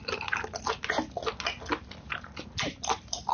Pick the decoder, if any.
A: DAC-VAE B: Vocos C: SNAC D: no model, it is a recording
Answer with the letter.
D